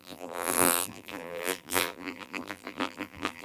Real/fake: fake